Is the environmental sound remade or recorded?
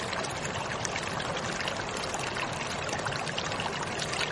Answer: recorded